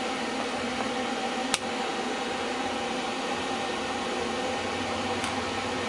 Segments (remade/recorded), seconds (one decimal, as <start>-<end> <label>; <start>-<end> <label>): 0.0-5.9 recorded